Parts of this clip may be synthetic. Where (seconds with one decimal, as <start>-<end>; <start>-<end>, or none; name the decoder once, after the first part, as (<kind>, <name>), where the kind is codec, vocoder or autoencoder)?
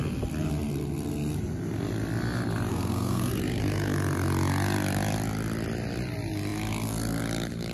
2.7-3.3 (codec, SNAC)